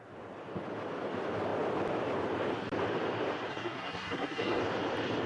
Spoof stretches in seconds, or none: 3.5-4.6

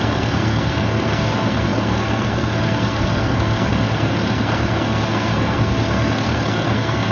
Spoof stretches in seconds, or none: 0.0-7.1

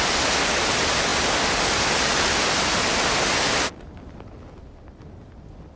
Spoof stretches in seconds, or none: none

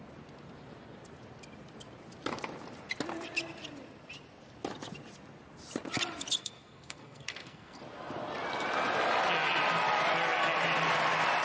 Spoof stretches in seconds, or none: 6.4-7.8

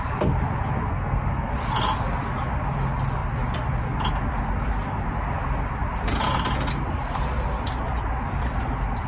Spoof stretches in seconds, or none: 0.9-1.5